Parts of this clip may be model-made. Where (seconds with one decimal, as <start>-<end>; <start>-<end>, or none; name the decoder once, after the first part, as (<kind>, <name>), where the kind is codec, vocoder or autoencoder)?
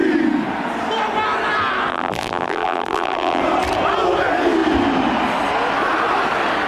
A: 1.9-3.4 (vocoder, BigVGAN v2)